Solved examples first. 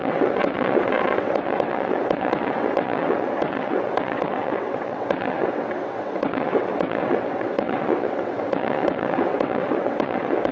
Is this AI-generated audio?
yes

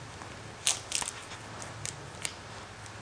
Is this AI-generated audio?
no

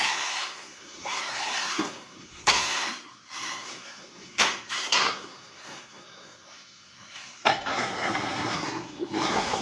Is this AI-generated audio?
yes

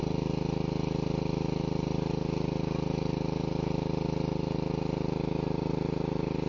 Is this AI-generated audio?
no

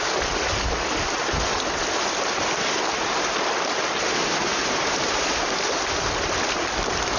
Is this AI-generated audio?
no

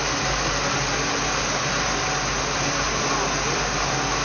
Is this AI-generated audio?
no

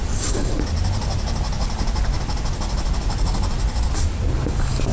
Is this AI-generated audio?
no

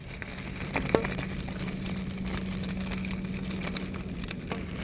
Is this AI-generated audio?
no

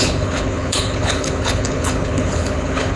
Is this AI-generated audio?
yes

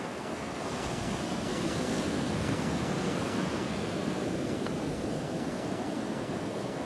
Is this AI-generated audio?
yes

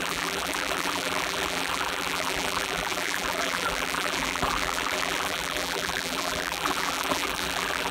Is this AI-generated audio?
yes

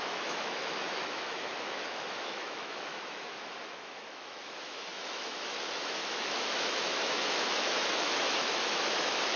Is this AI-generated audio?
yes